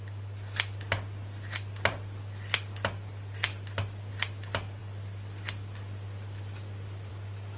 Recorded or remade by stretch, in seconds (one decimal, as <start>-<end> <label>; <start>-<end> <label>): 0.0-7.6 recorded